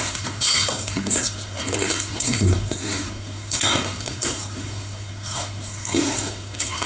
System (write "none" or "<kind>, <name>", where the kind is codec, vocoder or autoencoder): codec, SNAC